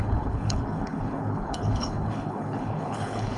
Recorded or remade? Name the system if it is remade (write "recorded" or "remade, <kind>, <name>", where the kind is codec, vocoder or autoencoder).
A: remade, codec, HILCodec